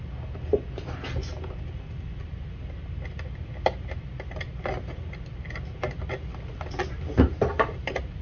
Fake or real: real